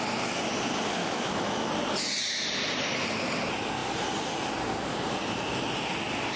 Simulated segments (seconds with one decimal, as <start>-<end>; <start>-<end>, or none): 1.0-1.7